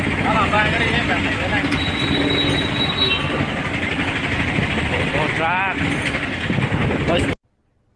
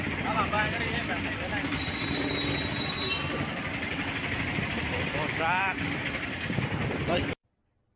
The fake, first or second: second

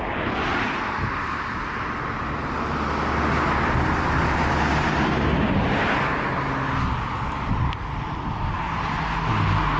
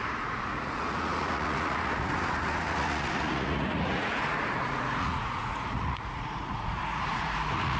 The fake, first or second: second